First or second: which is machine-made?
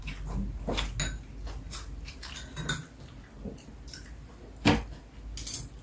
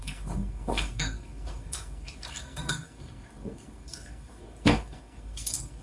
second